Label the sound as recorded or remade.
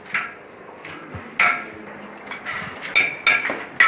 recorded